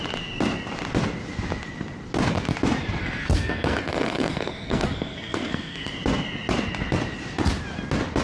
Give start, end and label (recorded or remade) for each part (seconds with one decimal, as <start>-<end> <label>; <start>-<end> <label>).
0.0-3.0 recorded; 3.0-5.9 remade; 5.9-8.2 recorded